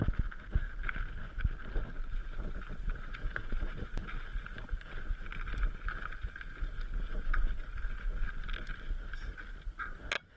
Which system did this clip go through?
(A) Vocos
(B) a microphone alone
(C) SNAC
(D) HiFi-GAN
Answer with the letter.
B